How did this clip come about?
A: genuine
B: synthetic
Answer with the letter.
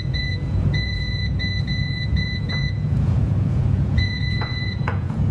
B